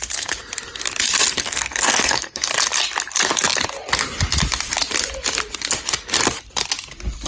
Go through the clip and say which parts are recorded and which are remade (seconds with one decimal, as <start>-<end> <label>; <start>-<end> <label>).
0.0-1.3 recorded; 1.3-2.5 remade; 2.5-7.3 recorded